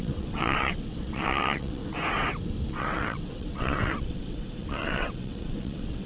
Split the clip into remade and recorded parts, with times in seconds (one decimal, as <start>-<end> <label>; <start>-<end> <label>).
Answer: 0.0-1.8 remade; 1.8-2.7 recorded; 2.7-6.1 remade